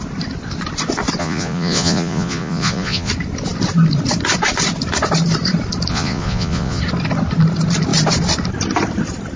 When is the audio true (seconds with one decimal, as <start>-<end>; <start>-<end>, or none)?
0.0-1.2; 3.1-5.9; 6.8-9.4